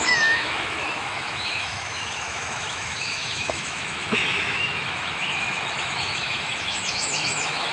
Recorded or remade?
remade